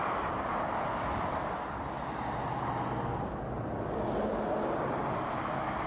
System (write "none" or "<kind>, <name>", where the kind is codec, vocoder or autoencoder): none